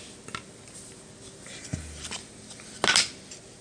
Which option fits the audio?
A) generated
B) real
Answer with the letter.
B